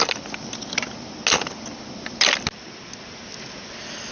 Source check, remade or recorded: recorded